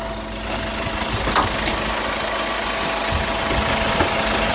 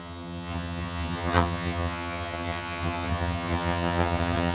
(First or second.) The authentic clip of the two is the first